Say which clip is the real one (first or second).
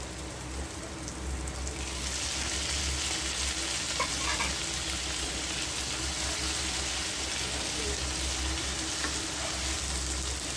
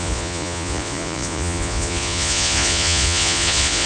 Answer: first